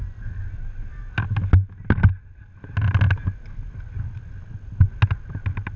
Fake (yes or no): no